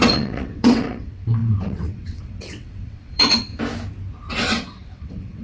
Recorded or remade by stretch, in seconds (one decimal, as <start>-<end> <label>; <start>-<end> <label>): 0.0-3.5 remade; 3.5-4.4 recorded; 4.4-5.4 remade